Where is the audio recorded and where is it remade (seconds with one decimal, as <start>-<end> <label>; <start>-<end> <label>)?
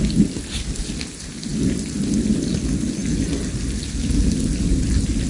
0.0-5.3 recorded